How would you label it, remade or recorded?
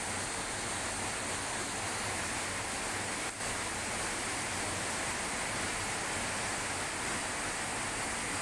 recorded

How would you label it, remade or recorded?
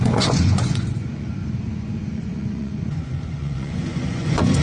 remade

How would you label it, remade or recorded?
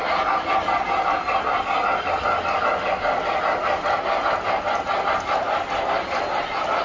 recorded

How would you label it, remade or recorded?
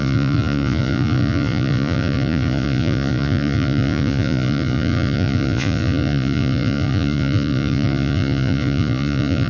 remade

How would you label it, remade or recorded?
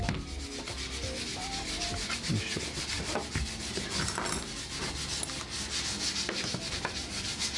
recorded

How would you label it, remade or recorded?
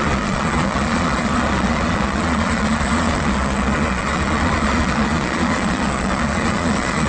remade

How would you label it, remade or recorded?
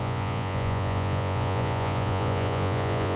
remade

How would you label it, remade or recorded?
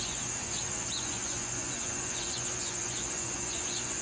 remade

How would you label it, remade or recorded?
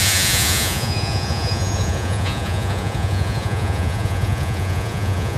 remade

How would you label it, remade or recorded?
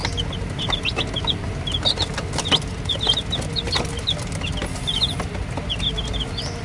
recorded